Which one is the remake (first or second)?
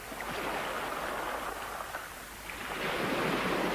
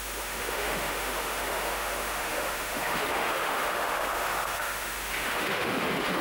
second